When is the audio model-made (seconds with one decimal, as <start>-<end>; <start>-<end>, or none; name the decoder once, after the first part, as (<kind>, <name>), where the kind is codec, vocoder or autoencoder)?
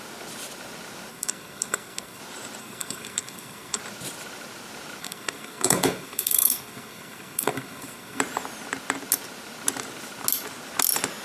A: 1.1-2.2 (codec, SNAC); 2.6-3.8; 5.0-8.2